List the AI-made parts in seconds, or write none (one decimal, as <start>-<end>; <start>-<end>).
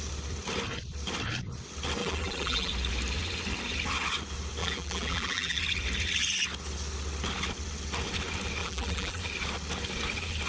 2.0-2.7; 4.6-5.6; 8.6-9.2